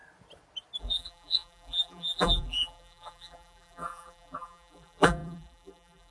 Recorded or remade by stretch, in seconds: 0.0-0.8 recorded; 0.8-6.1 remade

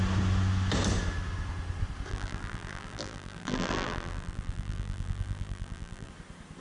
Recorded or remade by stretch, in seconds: 0.0-2.1 recorded; 2.1-6.1 remade; 6.1-6.6 recorded

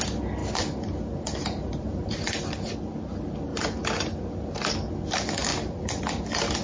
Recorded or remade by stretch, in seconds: 0.0-0.4 recorded; 0.4-2.4 remade; 2.4-3.5 recorded; 3.5-4.7 remade; 4.7-5.5 recorded; 5.5-6.0 remade; 6.0-6.6 recorded

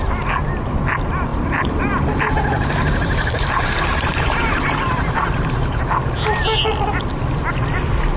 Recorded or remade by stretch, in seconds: 0.0-1.3 recorded; 1.3-5.8 remade; 5.8-8.2 recorded